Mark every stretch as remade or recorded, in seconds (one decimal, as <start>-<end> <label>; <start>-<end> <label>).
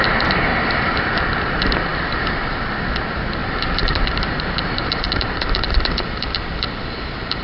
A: 0.0-1.9 recorded; 1.9-2.7 remade; 2.7-3.4 recorded; 3.4-6.8 remade; 6.8-7.4 recorded